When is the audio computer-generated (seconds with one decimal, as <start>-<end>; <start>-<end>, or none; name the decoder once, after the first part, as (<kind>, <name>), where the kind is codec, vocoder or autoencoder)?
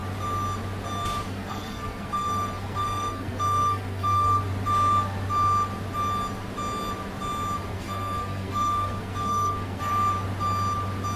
1.3-4.4 (codec, SNAC); 7.7-9.9